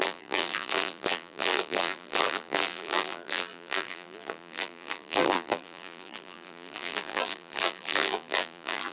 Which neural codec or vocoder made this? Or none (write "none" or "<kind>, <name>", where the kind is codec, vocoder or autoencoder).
vocoder, BigVGAN v2